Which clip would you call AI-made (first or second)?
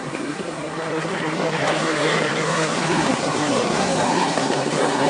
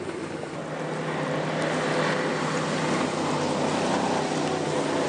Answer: first